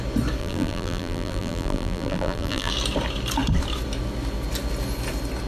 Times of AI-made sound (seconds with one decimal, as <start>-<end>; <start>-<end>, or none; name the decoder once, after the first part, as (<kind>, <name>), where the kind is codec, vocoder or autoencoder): 0.4-2.7 (vocoder, BigVGAN v2)